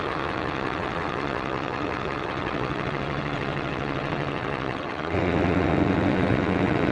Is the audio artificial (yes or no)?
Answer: yes